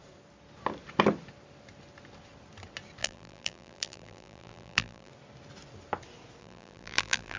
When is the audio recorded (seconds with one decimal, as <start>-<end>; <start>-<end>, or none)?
0.0-3.0; 5.1-6.4